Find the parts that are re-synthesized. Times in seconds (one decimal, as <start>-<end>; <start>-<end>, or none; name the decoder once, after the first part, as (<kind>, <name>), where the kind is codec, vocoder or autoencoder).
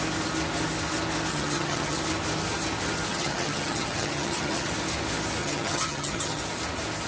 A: 1.3-2.0 (vocoder, HiFi-GAN); 3.1-4.7; 5.4-6.4